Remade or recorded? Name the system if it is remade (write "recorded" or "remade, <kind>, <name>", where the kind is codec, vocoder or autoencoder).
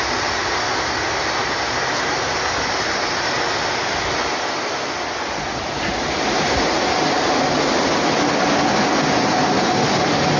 recorded